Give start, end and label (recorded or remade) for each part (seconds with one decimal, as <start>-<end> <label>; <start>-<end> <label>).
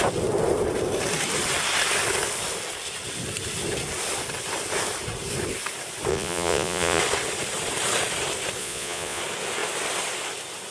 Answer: 0.0-6.1 recorded; 6.1-7.0 remade; 7.0-8.6 recorded; 8.6-9.2 remade; 9.2-10.7 recorded